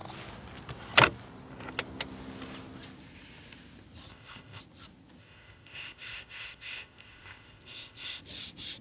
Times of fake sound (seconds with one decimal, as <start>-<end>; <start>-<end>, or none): 4.1-4.6; 5.2-8.2